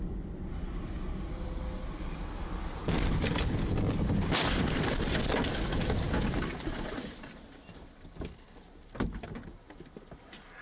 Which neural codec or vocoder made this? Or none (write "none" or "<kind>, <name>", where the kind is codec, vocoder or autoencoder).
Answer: none